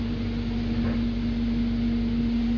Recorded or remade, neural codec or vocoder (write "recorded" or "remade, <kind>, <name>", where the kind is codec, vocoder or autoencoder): recorded